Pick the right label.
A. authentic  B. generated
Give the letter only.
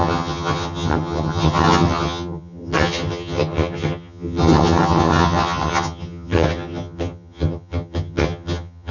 B